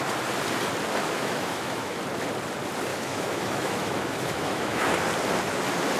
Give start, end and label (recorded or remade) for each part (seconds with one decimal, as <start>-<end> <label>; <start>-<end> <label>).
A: 0.0-1.0 recorded; 1.0-2.0 remade; 2.0-2.9 recorded; 2.9-4.9 remade; 4.9-6.0 recorded